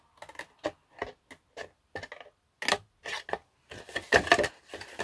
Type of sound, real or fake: real